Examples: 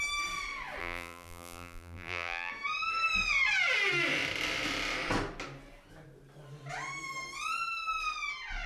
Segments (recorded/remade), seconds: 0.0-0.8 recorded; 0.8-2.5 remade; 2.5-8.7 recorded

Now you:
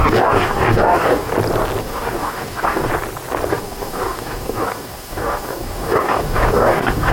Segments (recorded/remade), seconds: 0.0-1.3 remade; 1.3-1.8 recorded; 1.8-2.9 remade; 2.9-3.5 recorded; 3.5-7.1 remade

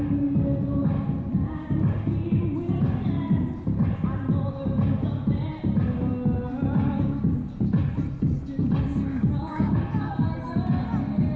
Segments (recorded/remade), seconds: 0.0-9.1 recorded; 9.1-9.8 remade; 9.8-11.4 recorded

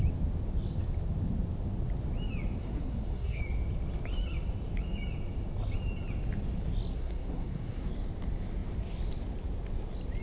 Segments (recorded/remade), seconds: 0.0-2.6 recorded; 2.6-3.4 remade; 3.4-6.9 recorded; 6.9-7.9 remade; 7.9-10.2 recorded

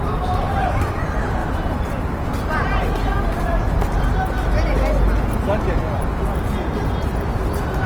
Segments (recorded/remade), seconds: 0.0-7.9 recorded

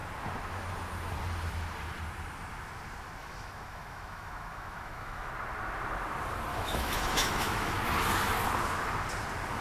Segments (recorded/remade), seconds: 0.0-3.2 recorded; 3.2-5.3 remade; 5.3-6.5 recorded; 6.5-7.8 remade; 7.8-9.6 recorded